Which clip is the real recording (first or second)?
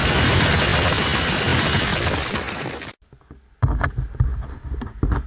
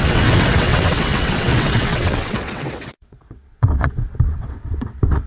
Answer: first